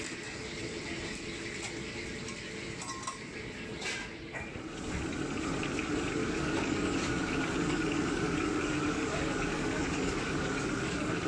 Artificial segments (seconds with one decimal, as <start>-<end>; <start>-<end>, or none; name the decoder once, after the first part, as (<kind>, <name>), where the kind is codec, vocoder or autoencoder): 6.2-11.3 (codec, DAC)